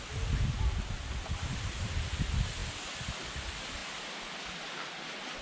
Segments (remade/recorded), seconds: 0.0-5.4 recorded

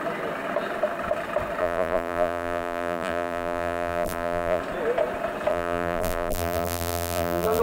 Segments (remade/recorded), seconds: 0.0-1.6 recorded; 1.6-4.6 remade; 4.6-5.5 recorded; 5.5-7.6 remade

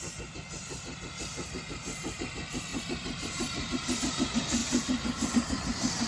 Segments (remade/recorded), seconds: 0.0-2.7 recorded; 2.7-4.0 remade; 4.0-4.6 recorded; 4.6-5.3 remade; 5.3-6.1 recorded

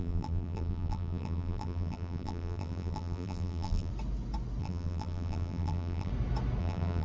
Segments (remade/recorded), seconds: 0.0-3.9 remade; 3.9-4.6 recorded; 4.6-6.1 remade; 6.1-6.6 recorded; 6.6-7.0 remade

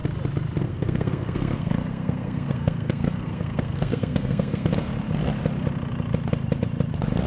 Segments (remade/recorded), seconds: 0.0-0.6 recorded; 0.6-4.7 remade; 4.7-7.3 recorded

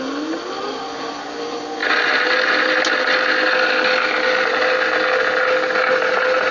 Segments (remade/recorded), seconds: 0.0-6.5 recorded

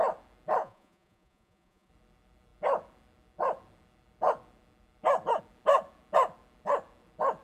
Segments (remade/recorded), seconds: 0.0-0.6 recorded; 0.6-1.9 remade; 1.9-7.4 recorded

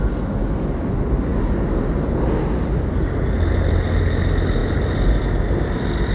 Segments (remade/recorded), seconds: 0.0-6.1 recorded